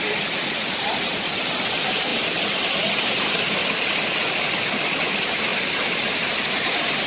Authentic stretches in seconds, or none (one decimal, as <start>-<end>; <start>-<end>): 3.6-4.7; 5.5-6.4